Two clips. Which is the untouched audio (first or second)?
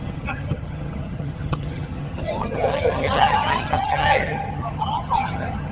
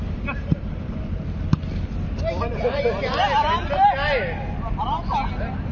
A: second